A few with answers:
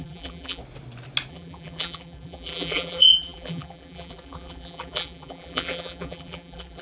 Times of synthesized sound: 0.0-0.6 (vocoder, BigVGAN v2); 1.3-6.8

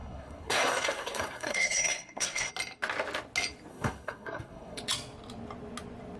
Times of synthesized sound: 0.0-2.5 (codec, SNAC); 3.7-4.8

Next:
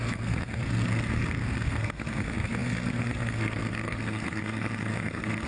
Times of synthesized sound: 0.0-5.5 (codec, SNAC)

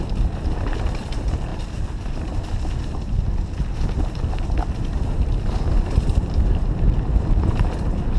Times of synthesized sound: none